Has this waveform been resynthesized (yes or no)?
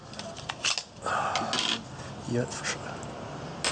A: no